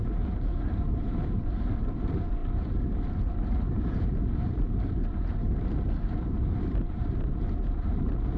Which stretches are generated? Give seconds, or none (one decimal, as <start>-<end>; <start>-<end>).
0.0-8.4